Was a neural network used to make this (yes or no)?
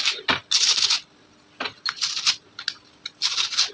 no